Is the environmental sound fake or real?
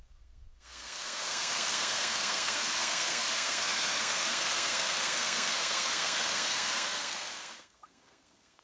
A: fake